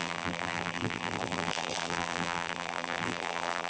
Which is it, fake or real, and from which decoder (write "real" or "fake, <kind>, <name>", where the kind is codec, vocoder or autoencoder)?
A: fake, vocoder, BigVGAN v2